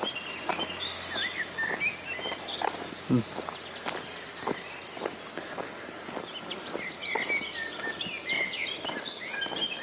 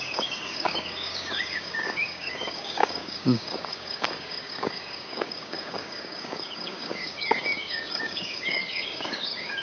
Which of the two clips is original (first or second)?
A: first